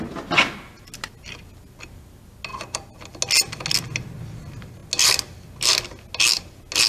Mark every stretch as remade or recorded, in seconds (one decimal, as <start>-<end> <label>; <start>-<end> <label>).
0.0-6.9 recorded